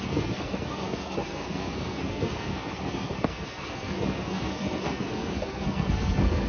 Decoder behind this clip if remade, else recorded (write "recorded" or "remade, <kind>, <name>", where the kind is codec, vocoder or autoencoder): remade, codec, SNAC